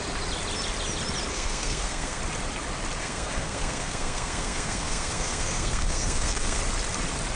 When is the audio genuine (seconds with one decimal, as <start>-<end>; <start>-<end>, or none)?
0.0-1.3; 2.2-3.0; 6.6-7.4